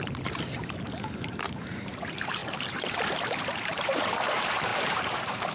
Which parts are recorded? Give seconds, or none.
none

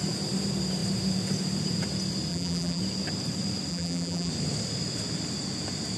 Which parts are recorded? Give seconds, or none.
0.0-2.3; 2.8-3.7; 4.3-6.0

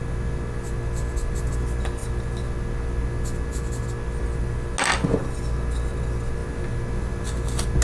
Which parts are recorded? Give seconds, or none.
0.0-7.8

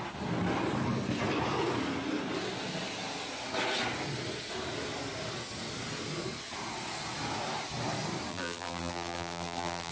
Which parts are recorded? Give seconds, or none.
0.0-8.3